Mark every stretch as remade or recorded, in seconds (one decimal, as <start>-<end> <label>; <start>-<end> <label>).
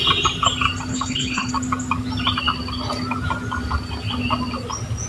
0.0-0.9 recorded; 0.9-1.5 remade; 1.5-5.1 recorded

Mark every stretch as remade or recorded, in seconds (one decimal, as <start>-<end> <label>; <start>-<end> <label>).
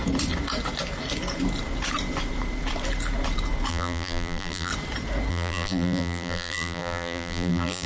0.0-3.7 recorded; 3.7-4.7 remade; 4.7-5.3 recorded; 5.3-7.9 remade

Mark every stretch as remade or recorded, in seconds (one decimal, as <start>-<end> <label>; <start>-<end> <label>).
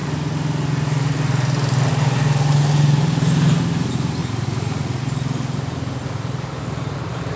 0.0-4.2 recorded; 4.2-5.0 remade; 5.0-7.4 recorded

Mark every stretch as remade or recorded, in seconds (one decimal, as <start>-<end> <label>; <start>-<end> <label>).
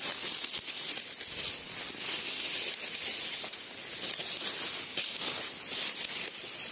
0.0-6.7 recorded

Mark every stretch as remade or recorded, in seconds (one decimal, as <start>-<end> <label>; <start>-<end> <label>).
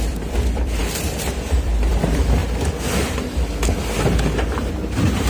0.0-2.4 remade; 2.4-4.7 recorded; 4.7-5.3 remade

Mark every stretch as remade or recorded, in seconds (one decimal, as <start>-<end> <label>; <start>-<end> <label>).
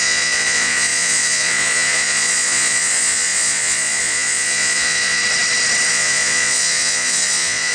0.0-5.2 remade; 5.2-5.9 recorded; 5.9-7.7 remade